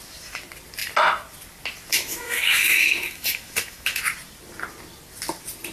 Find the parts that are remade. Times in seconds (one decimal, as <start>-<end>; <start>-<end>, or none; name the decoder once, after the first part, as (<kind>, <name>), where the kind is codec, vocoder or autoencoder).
1.9-4.0 (autoencoder, DAC-VAE)